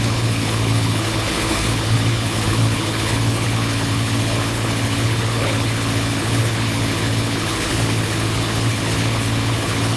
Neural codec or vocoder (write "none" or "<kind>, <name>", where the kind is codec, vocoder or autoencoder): codec, HILCodec